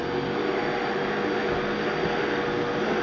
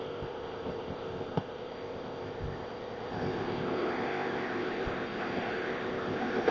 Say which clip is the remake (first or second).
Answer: second